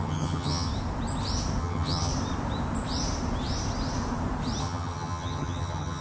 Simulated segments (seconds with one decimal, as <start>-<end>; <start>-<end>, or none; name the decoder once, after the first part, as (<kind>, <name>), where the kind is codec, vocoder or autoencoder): 0.0-0.7 (vocoder, HiFi-GAN); 1.6-2.1; 4.6-6.0